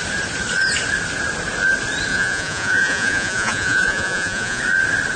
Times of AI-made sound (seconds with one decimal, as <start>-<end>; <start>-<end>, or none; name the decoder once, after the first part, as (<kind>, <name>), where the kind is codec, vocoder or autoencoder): 2.1-4.6 (vocoder, Vocos)